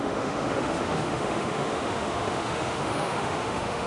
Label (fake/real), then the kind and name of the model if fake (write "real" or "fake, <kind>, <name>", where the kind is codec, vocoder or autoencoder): fake, autoencoder, DAC-VAE